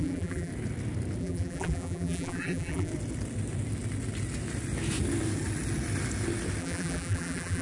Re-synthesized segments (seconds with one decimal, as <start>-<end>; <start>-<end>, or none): 0.0-0.5; 1.2-2.9; 6.6-7.6